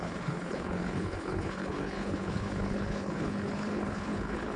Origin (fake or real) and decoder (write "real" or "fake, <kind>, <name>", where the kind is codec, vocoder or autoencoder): fake, codec, HILCodec